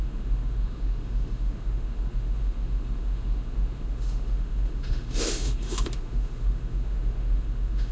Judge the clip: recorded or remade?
remade